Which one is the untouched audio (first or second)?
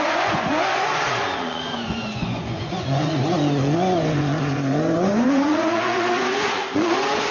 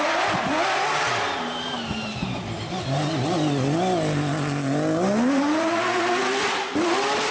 second